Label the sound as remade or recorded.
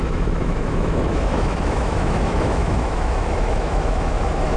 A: remade